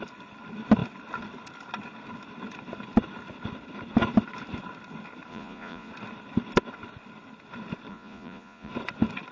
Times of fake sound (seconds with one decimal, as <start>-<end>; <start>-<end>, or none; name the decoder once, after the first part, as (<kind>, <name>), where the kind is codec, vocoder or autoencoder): 5.3-5.9 (vocoder, Vocos); 7.9-8.7